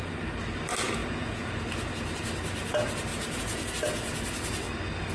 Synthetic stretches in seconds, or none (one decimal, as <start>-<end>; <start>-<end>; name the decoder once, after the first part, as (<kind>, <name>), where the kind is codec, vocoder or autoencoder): 1.0-1.6 (vocoder, Vocos); 3.1-3.7